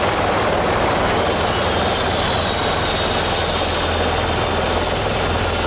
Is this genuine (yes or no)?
yes